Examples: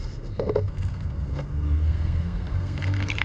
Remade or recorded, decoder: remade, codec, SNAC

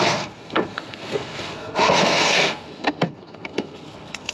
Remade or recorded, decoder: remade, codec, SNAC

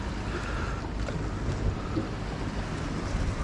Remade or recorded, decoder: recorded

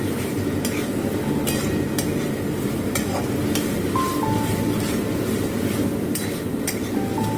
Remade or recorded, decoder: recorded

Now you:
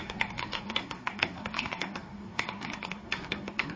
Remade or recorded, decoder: remade, codec, SNAC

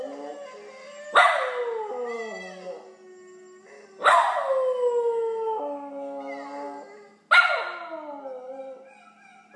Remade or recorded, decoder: recorded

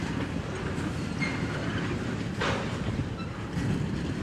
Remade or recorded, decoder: recorded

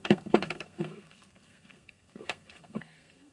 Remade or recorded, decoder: remade, codec, SNAC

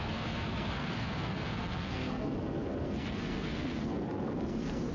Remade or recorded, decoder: remade, codec, SNAC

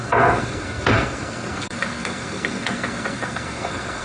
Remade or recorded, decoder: remade, codec, SNAC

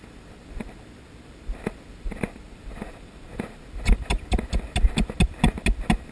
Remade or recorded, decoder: recorded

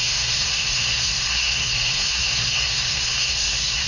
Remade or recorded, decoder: remade, codec, SNAC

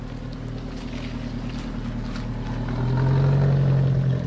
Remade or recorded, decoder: recorded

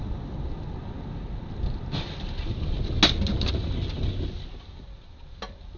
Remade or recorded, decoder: recorded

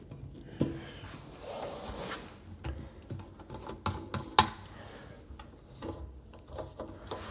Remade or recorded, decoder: recorded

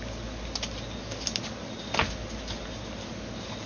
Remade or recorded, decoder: recorded